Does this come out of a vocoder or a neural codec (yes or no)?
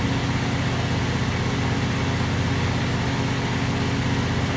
no